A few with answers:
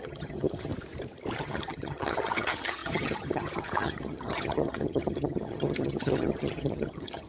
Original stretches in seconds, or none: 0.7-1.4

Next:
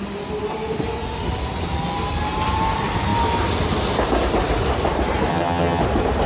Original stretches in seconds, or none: 0.0-5.3; 5.8-6.3

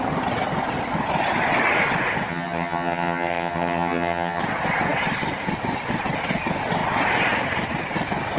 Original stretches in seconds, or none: 0.0-2.3; 4.4-8.4